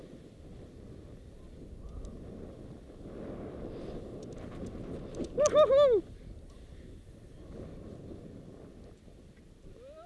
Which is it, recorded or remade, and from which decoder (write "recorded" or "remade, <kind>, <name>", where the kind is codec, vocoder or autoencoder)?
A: recorded